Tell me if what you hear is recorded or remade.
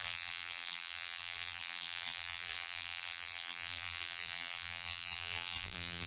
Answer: remade